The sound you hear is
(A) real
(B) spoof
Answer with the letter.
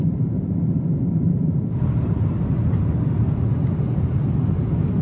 B